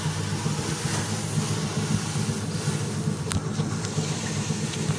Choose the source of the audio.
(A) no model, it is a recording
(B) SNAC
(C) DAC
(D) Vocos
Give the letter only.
A